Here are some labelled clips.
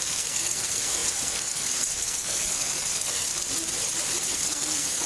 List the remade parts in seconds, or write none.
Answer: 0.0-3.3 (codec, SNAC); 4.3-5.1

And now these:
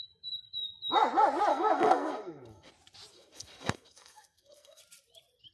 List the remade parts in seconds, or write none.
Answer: 1.5-2.7 (codec, SNAC); 3.1-4.8

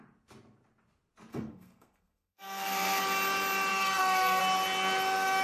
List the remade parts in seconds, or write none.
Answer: 1.3-3.0 (codec, SNAC); 3.7-4.4

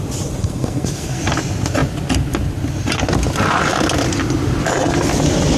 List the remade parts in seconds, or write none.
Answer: 0.4-1.2 (codec, SNAC)

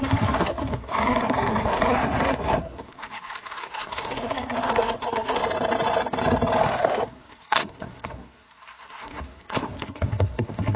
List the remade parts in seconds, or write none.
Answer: 0.0-5.4 (codec, SNAC); 6.6-10.8

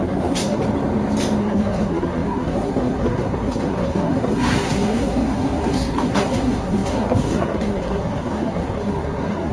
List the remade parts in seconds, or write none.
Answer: 0.0-0.6 (codec, SNAC); 1.4-9.5

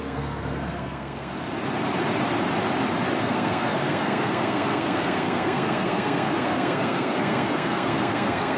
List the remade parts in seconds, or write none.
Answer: 0.0-1.3 (codec, SNAC); 3.2-8.6

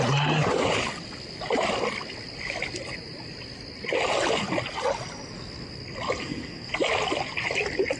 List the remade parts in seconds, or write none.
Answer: 6.2-6.7 (codec, SNAC)